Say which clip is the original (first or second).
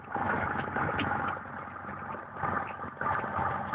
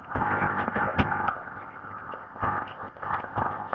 first